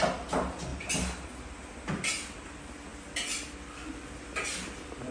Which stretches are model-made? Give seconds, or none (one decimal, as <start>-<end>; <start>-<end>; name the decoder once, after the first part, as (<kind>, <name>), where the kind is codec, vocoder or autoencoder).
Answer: none